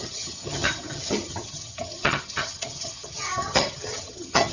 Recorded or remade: remade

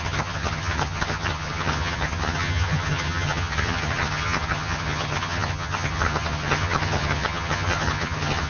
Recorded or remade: remade